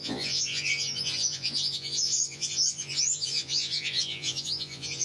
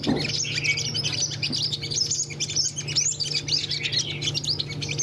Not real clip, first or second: first